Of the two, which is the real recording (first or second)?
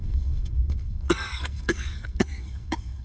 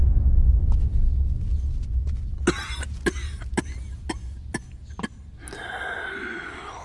second